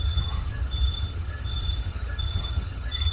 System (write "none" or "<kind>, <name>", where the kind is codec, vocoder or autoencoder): vocoder, HiFi-GAN